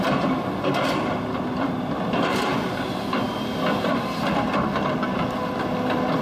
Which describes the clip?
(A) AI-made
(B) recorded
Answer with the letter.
B